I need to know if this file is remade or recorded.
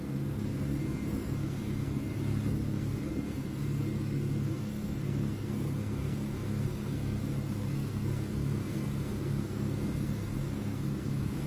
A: remade